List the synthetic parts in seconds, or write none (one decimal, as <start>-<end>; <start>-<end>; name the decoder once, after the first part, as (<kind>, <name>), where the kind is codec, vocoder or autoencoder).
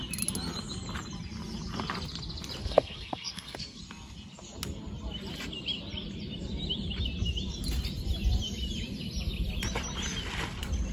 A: 2.6-3.8 (codec, SNAC)